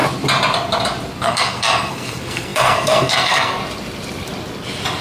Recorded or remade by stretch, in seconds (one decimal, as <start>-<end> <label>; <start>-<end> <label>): 0.0-1.2 recorded; 1.2-3.6 remade; 3.6-5.0 recorded

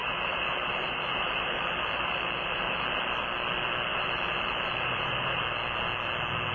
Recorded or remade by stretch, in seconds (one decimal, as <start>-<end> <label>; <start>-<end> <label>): 0.0-3.0 remade; 3.0-3.9 recorded; 3.9-5.4 remade; 5.4-6.5 recorded

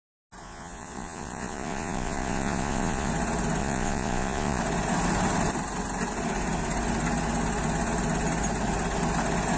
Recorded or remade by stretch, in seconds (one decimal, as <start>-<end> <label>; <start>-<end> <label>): 0.0-0.4 recorded; 0.4-3.1 remade; 3.1-3.6 recorded; 3.6-4.6 remade; 4.6-9.6 recorded

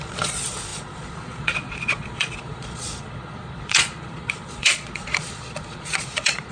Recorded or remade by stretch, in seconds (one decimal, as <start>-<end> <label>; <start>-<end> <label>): 0.0-6.5 remade

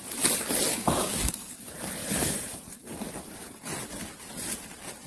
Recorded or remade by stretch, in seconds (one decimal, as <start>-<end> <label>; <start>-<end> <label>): 0.0-0.7 recorded; 0.7-1.6 remade; 1.6-5.1 recorded

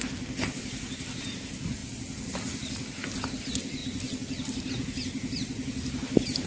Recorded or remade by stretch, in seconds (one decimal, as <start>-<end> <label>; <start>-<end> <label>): 0.0-6.5 recorded

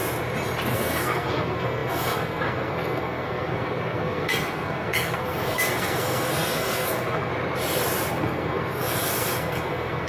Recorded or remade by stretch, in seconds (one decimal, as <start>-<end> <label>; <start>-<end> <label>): 0.0-0.7 recorded; 0.7-7.3 remade; 7.3-8.1 recorded; 8.1-10.1 remade